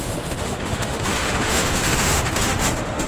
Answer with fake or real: fake